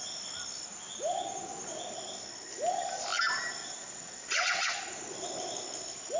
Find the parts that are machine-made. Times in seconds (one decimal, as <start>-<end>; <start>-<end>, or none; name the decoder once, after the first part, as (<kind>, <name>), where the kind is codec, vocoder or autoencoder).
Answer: 3.6-4.7 (vocoder, WaveNeXt)